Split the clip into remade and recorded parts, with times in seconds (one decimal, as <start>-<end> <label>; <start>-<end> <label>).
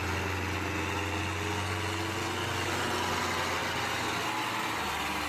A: 0.0-5.3 recorded